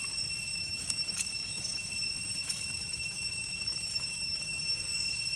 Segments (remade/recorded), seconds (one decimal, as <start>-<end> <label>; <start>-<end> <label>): 0.0-0.5 recorded; 0.5-1.9 remade; 1.9-2.4 recorded; 2.4-4.6 remade; 4.6-5.3 recorded